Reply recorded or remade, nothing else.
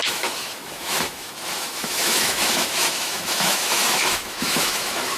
remade